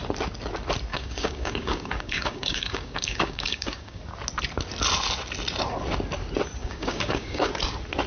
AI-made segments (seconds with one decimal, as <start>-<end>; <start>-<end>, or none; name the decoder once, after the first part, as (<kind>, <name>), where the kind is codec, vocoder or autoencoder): 0.9-4.0 (codec, DAC); 6.6-7.5

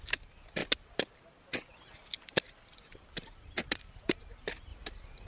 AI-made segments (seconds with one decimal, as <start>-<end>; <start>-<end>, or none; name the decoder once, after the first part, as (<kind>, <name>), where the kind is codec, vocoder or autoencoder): none

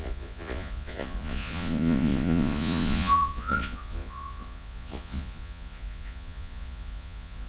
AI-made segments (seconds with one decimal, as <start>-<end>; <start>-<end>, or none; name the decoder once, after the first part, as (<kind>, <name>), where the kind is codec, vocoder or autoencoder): 0.0-7.5 (vocoder, Vocos)

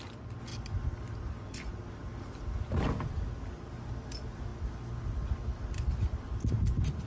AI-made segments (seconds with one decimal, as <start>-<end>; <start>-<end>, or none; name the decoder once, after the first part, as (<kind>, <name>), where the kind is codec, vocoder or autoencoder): none

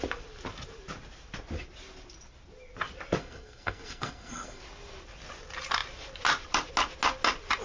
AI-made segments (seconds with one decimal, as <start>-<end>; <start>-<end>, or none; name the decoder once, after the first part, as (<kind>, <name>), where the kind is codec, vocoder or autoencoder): 3.2-4.6 (codec, SNAC)

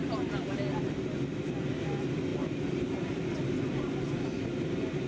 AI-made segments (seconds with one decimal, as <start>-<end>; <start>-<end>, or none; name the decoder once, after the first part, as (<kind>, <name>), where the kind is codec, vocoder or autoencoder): none

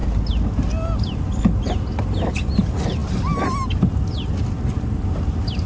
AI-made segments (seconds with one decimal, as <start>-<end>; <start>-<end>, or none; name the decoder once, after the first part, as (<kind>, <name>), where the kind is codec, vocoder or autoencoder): none